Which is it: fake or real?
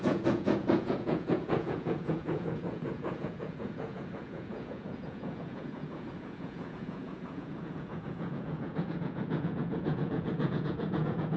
fake